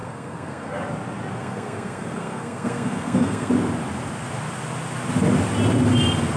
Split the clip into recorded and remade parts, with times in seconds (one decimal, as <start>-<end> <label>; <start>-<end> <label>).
0.0-0.7 remade; 0.7-1.4 recorded; 1.4-3.5 remade; 3.5-6.4 recorded